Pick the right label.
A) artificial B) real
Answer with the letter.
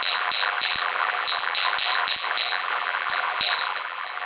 A